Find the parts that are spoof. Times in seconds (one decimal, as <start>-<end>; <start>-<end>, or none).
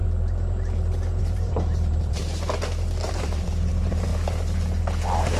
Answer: 1.2-2.2; 3.1-4.1